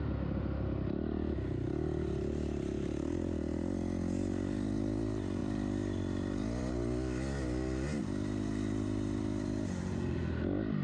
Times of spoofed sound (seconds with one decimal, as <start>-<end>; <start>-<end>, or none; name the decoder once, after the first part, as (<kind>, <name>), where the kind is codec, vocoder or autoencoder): 5.4-6.7 (vocoder, BigVGAN v2)